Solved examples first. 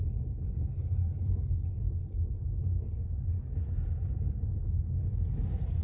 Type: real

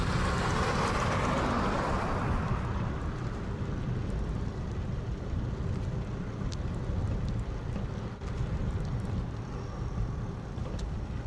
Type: real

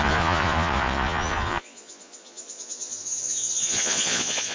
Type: fake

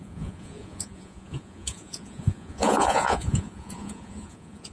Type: fake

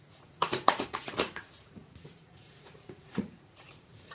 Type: fake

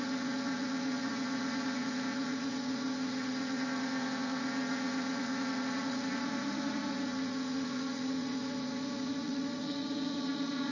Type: fake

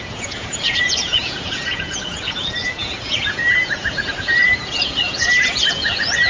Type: fake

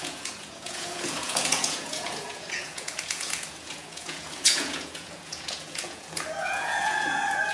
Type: fake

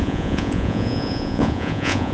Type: fake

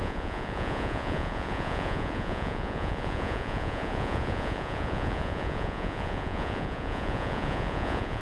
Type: fake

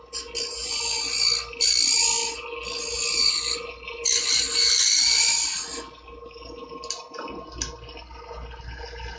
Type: real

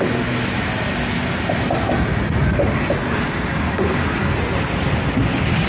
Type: real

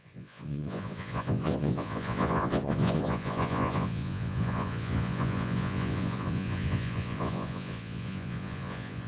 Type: fake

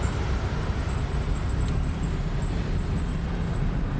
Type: real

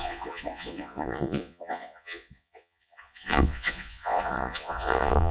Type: fake